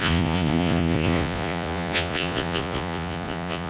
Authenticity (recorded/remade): remade